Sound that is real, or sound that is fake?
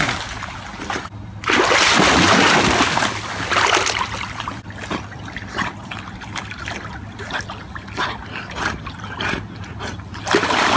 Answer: real